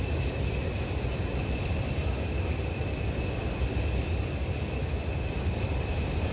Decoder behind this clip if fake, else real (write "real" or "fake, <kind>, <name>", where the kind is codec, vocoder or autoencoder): real